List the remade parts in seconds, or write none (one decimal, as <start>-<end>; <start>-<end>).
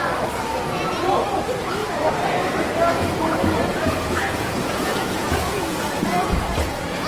3.7-7.1